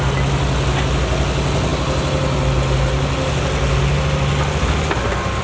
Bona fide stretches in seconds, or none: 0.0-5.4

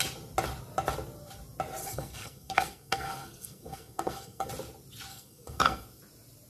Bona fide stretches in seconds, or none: 0.0-1.8; 4.5-5.1; 6.0-6.5

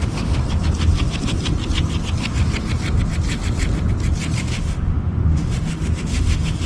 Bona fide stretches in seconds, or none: 0.4-4.4

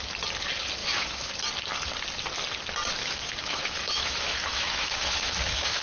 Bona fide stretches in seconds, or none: 0.0-0.8; 1.3-3.0

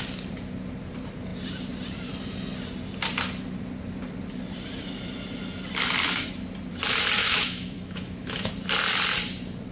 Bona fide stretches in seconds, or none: 0.0-7.2; 8.5-9.7

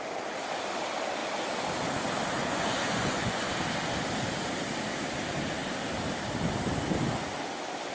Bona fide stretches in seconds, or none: 0.0-2.4; 3.5-7.9